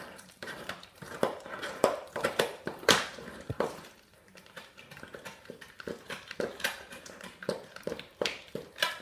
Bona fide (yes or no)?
no